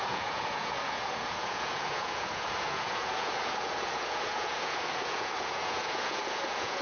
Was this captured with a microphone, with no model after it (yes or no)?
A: no